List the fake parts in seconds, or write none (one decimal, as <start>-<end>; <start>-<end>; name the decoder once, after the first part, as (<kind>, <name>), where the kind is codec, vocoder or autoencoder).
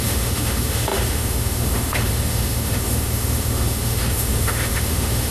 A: 0.0-5.3 (autoencoder, DAC-VAE)